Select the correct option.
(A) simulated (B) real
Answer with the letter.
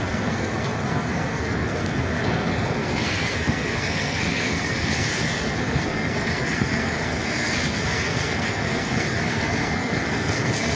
A